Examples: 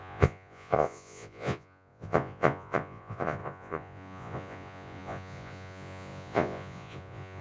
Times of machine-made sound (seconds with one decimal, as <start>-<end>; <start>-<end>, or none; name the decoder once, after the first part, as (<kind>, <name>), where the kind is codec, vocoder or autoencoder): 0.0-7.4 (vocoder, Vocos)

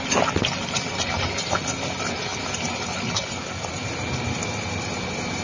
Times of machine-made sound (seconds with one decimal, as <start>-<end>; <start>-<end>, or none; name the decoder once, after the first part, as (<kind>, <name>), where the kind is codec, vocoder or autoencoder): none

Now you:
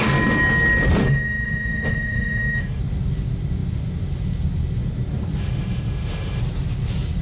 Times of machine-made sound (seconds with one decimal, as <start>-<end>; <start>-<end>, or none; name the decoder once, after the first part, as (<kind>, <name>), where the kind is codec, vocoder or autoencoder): 1.0-2.8 (autoencoder, DAC-VAE); 5.4-6.4